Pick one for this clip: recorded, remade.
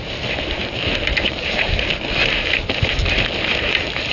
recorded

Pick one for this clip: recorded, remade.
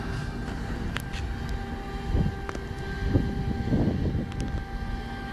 recorded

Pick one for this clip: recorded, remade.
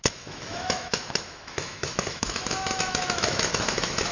remade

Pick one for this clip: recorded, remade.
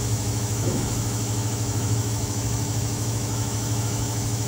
remade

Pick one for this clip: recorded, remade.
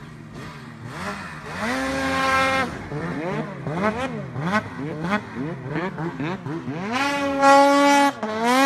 recorded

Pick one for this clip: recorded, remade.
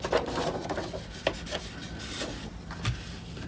recorded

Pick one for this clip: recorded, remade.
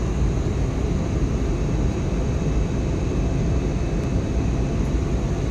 recorded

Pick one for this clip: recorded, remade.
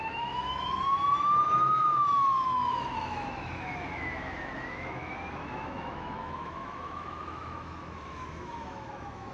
remade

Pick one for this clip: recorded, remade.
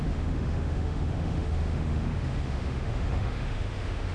remade